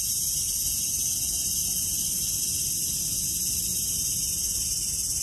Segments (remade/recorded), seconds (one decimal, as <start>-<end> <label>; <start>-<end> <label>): 0.0-3.7 recorded; 3.7-4.3 remade; 4.3-5.2 recorded